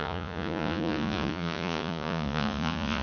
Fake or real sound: fake